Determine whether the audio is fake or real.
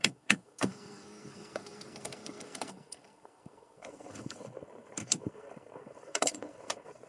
fake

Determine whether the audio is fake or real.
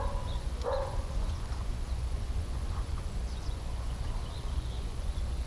fake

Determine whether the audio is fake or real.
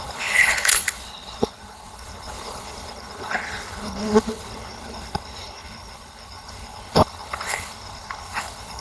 fake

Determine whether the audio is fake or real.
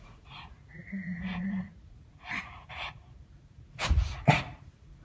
fake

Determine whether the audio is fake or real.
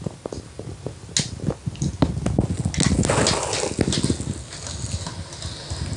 real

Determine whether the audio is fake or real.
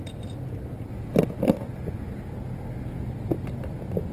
real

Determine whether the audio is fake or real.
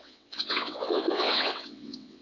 fake